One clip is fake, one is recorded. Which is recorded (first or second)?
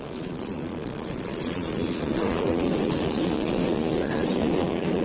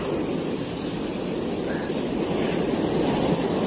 second